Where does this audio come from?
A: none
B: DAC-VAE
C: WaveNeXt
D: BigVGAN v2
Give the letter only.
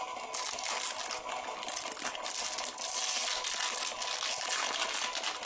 A